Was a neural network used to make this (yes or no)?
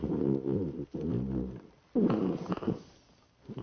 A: no